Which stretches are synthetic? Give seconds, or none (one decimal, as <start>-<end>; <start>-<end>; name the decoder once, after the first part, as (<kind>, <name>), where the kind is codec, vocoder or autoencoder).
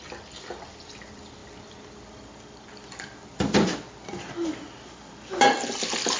none